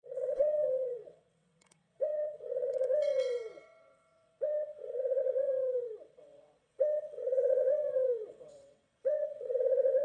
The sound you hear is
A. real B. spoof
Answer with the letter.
B